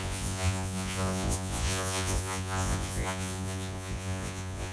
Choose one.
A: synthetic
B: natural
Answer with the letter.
A